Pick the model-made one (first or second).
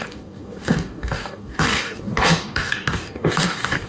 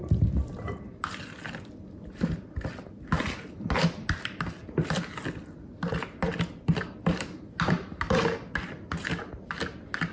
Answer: first